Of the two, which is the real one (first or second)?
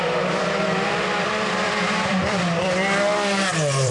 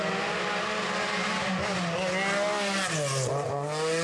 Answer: second